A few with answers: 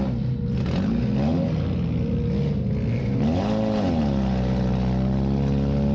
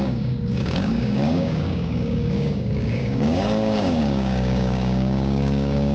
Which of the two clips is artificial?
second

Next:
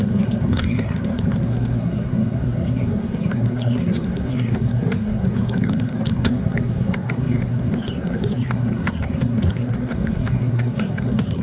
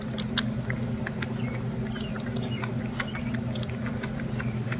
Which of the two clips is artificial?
first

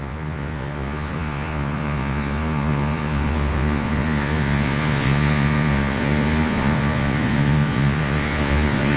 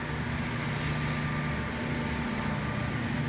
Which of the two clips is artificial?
first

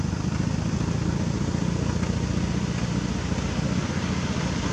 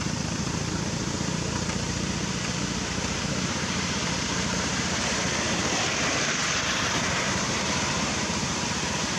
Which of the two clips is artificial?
second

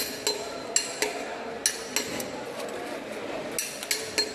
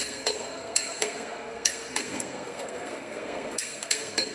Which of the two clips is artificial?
second